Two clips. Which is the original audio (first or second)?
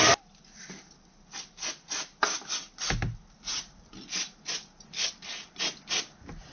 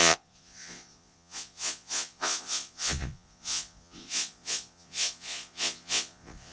first